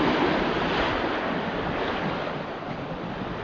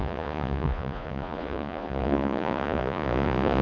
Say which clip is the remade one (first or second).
second